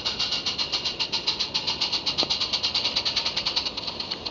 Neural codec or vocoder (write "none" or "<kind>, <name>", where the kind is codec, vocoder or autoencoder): none